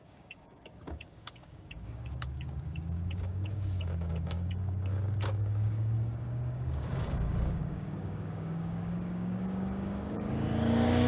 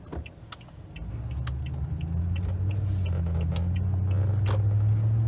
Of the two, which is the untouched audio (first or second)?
second